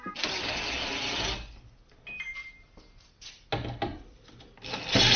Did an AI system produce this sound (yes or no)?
no